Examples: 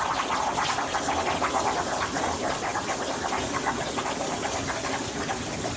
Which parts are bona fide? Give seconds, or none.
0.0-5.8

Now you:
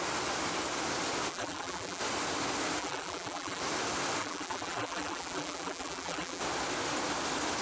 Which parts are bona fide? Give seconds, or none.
0.0-1.3; 2.0-2.8; 3.6-4.2; 6.4-7.6